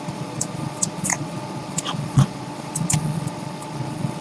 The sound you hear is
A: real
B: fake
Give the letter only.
B